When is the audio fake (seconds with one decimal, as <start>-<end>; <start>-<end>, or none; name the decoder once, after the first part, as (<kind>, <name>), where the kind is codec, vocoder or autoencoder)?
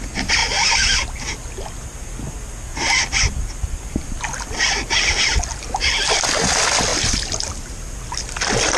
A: 2.7-4.3 (vocoder, BigVGAN v2); 6.9-7.5